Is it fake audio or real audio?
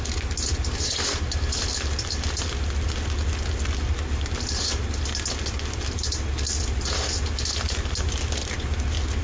real